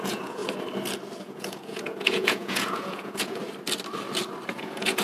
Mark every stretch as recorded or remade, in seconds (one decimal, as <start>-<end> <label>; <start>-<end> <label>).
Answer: 0.0-0.4 remade; 0.4-1.2 recorded; 1.2-3.4 remade; 3.4-4.5 recorded; 4.5-5.0 remade